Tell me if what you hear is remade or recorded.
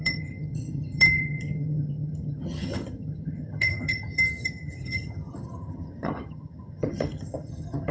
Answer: remade